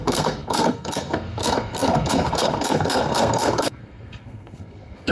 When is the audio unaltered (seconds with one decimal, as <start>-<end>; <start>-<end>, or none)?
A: none